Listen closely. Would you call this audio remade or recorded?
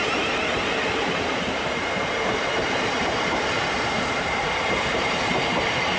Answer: remade